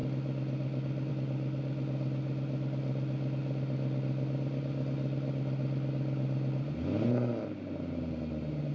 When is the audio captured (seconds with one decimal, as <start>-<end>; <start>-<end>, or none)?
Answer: 0.0-8.7